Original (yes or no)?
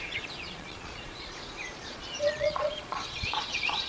no